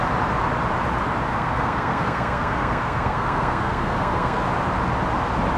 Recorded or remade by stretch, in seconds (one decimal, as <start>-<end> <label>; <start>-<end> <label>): 0.0-1.3 recorded; 1.3-4.4 remade; 4.4-5.6 recorded